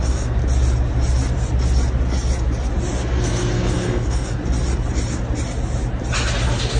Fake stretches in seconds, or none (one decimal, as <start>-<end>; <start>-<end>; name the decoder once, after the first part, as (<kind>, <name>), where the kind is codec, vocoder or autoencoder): 0.0-0.4 (codec, SNAC); 3.2-4.4